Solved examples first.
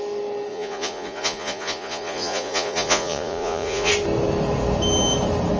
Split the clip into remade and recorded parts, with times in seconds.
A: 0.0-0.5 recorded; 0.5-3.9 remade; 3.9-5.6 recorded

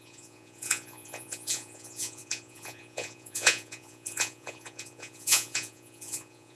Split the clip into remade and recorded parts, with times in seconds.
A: 0.0-6.6 remade